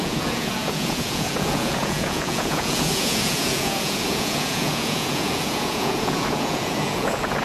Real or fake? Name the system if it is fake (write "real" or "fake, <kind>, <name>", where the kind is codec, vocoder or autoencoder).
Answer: fake, vocoder, Vocos